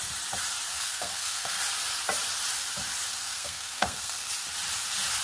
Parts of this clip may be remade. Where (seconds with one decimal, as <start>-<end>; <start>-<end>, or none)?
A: 0.7-1.6; 3.1-4.3